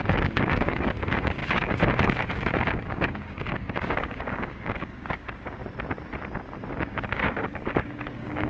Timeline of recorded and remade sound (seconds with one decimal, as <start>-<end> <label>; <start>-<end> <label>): 0.0-5.6 remade; 5.6-6.7 recorded; 6.7-8.5 remade